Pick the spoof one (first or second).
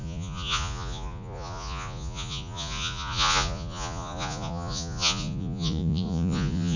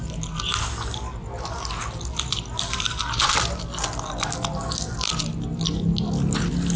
first